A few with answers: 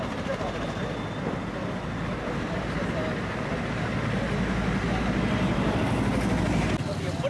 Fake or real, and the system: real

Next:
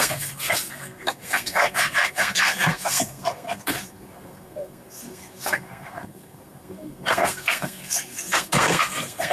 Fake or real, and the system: fake, codec, SNAC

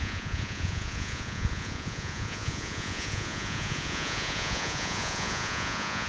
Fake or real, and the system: fake, vocoder, Vocos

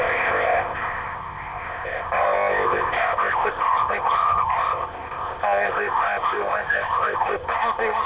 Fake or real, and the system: fake, codec, ZipCodec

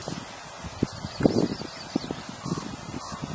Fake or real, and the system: fake, vocoder, BigVGAN v2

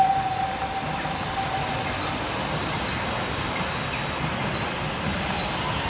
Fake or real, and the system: real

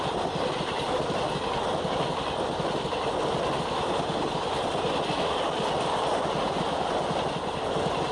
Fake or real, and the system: real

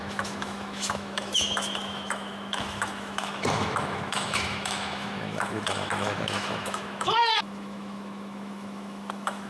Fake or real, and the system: fake, autoencoder, DAC-VAE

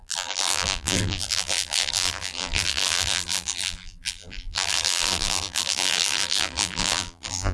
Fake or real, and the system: fake, vocoder, BigVGAN v2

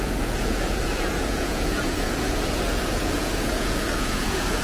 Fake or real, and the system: fake, vocoder, Vocos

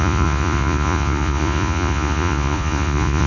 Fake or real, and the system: fake, vocoder, Vocos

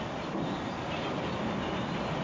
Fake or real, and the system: real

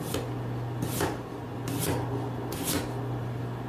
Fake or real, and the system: real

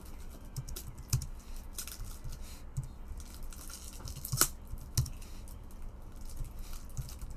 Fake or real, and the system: real